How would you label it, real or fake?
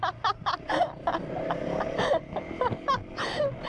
real